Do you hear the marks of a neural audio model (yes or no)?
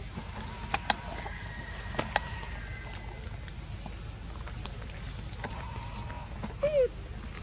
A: no